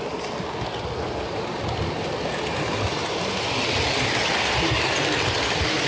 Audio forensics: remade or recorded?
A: recorded